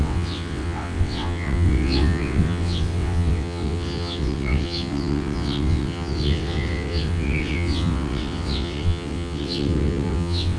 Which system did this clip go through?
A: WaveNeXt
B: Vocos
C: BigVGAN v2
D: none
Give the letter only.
A